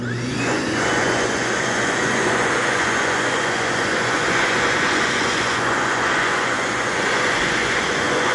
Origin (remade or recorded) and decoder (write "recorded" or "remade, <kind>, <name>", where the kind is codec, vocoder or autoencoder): remade, vocoder, Vocos